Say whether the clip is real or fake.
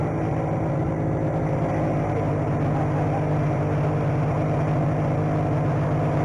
real